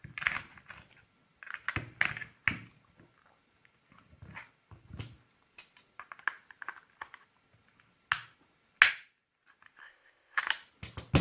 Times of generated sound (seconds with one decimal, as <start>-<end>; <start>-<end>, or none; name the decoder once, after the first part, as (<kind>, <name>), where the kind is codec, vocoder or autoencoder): 9.8-10.4 (codec, ZipCodec)